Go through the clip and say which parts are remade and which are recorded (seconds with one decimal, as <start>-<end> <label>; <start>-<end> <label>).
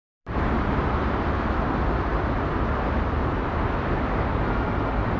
0.0-1.3 remade; 1.3-5.2 recorded